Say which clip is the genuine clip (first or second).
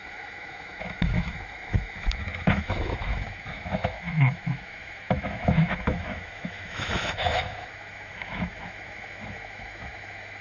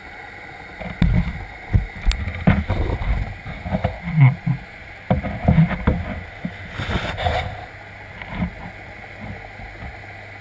second